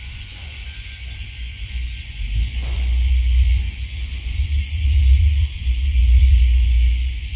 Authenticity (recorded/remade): remade